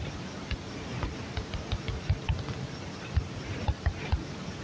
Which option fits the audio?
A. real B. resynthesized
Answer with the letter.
A